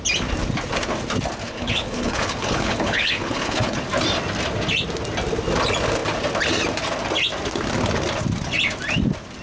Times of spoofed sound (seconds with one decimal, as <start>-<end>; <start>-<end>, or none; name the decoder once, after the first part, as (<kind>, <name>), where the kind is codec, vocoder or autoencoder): 1.4-3.8 (codec, HILCodec)